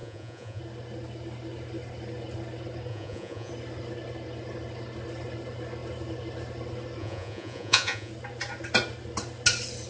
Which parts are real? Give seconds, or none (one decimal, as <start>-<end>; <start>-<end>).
0.6-2.9; 3.5-7.0; 8.1-9.9